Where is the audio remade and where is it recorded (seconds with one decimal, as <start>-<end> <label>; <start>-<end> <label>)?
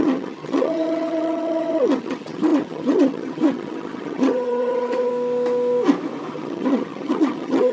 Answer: 0.0-5.1 remade; 5.1-6.3 recorded; 6.3-7.7 remade